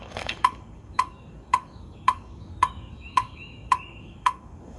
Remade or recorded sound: remade